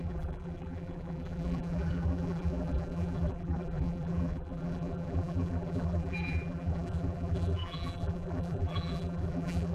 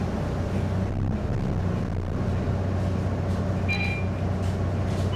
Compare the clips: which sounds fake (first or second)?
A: first